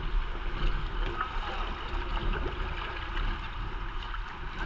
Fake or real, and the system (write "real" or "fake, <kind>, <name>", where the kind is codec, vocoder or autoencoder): real